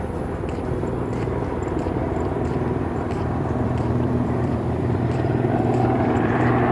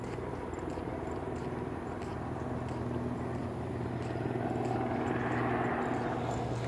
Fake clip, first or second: first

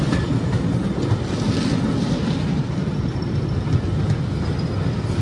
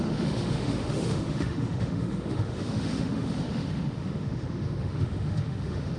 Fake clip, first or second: second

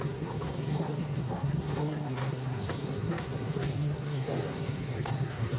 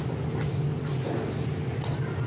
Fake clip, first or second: first